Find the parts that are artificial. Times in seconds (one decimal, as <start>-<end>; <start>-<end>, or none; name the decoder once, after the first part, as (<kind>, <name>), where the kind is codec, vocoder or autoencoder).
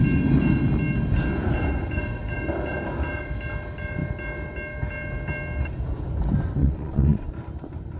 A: 6.6-7.3 (vocoder, WaveNeXt)